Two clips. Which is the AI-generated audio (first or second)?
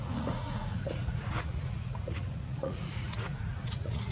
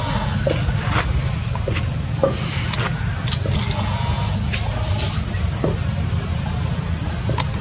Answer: first